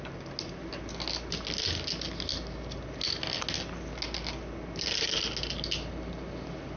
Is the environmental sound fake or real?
real